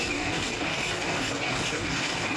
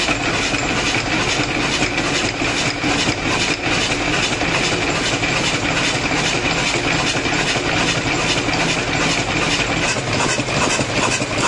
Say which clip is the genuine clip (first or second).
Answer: second